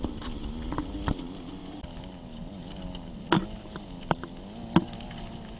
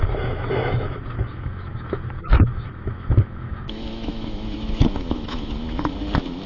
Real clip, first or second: first